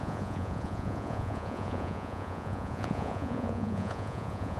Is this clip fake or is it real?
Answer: fake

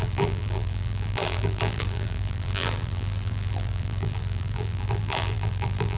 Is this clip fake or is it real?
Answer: fake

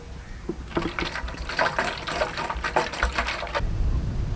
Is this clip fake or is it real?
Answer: real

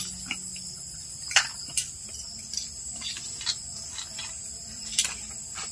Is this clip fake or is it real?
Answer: real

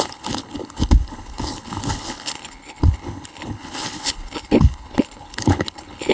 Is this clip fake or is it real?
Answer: fake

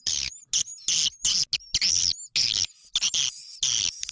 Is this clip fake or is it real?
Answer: real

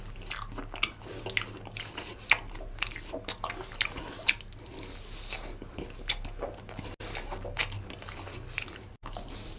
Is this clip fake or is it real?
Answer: real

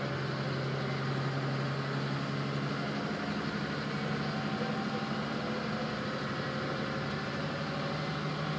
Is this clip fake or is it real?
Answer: real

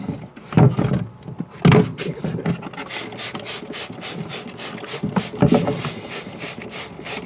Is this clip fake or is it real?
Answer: real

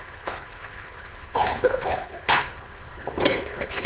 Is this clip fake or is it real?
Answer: fake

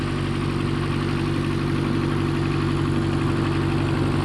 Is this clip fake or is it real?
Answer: real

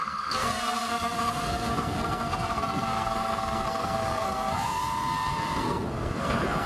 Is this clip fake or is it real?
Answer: fake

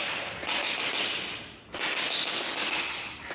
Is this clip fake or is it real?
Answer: real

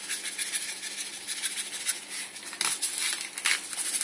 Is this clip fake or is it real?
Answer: real